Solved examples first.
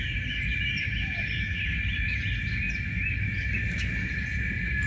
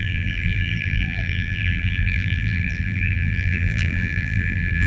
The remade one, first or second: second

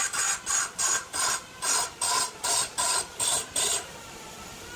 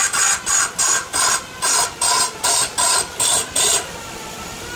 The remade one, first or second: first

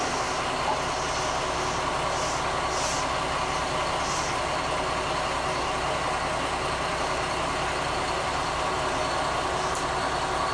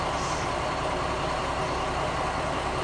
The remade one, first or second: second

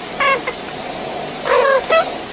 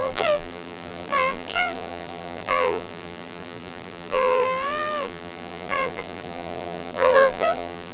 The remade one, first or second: second